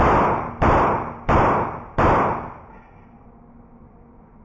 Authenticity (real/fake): real